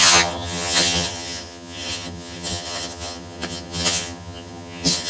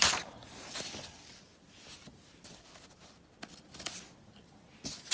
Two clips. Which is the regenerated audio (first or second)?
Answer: first